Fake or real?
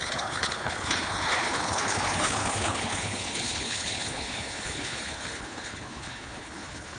fake